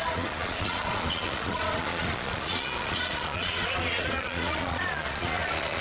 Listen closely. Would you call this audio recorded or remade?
remade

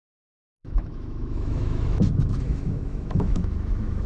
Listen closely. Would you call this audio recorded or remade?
remade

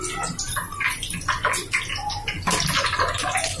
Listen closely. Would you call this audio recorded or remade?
recorded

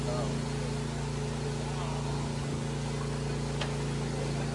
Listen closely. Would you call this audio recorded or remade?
recorded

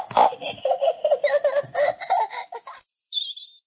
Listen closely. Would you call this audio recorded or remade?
recorded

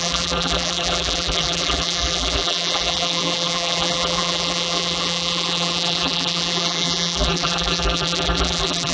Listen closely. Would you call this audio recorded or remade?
remade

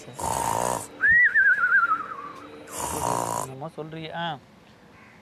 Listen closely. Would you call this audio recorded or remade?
recorded